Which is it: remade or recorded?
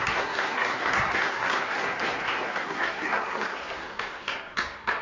remade